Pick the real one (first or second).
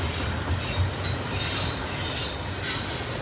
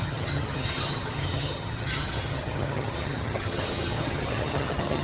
first